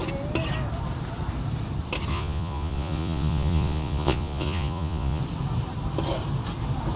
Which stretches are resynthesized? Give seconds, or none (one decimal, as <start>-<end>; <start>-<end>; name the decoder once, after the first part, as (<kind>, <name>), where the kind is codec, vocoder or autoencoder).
2.1-5.2 (vocoder, Vocos)